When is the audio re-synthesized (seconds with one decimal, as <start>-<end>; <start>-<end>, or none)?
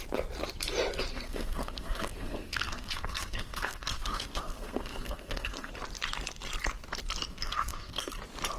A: 1.1-5.7; 7.3-8.1